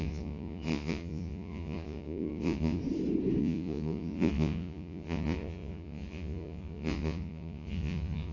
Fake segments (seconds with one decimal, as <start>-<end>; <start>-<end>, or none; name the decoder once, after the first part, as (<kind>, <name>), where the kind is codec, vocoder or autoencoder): 0.0-2.8 (vocoder, Vocos); 3.4-8.3